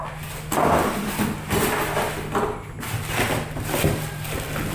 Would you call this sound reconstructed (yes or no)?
no